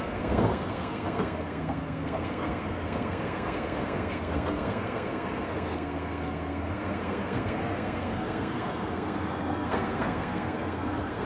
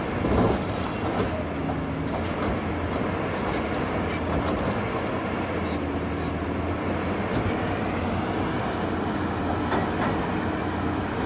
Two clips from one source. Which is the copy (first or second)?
first